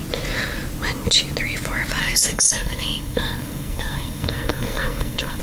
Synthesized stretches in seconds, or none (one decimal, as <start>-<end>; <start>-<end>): 2.0-5.4